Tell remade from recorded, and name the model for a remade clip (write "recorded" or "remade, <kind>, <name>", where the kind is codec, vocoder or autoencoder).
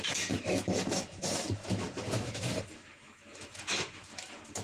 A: remade, autoencoder, DAC-VAE